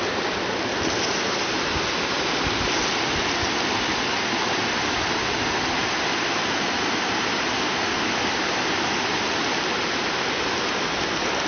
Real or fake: real